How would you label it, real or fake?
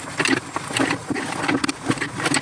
real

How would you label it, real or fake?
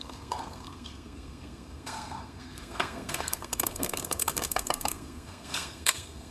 fake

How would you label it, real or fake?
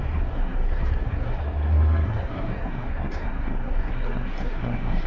fake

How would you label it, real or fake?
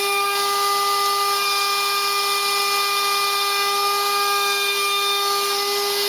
real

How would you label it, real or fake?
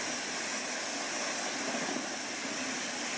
real